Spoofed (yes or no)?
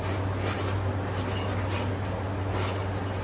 no